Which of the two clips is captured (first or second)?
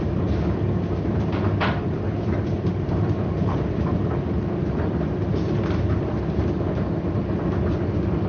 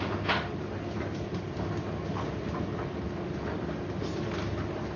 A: second